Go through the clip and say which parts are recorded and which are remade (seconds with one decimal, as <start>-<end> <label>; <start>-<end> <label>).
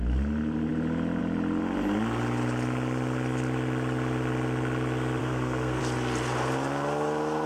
0.0-5.2 recorded; 5.2-5.8 remade; 5.8-7.5 recorded